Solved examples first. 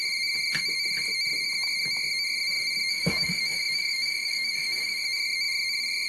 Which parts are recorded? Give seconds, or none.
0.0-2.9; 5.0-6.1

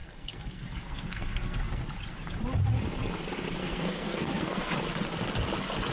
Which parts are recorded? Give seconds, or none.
1.8-3.6; 4.7-5.9

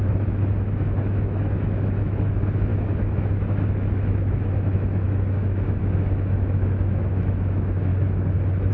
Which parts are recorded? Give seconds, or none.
7.9-8.7

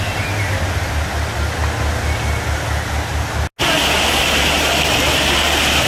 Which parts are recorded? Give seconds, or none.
0.0-5.9

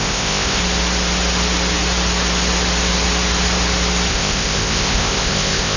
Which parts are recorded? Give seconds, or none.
0.6-4.1

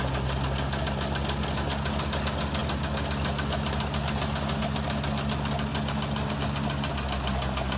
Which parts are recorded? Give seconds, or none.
0.0-7.8

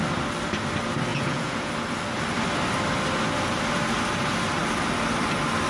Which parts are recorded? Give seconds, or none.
0.0-1.1; 1.7-5.7